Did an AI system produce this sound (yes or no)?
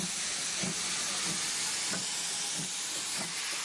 no